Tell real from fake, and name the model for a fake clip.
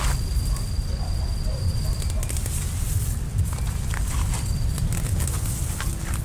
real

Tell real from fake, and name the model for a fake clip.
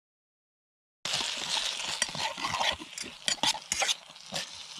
real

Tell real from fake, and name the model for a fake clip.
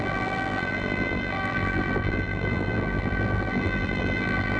fake, vocoder, BigVGAN v2